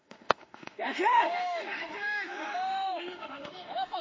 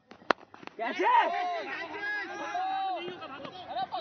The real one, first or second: second